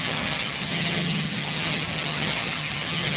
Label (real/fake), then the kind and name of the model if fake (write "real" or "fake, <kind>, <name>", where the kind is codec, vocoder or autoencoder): fake, vocoder, HiFi-GAN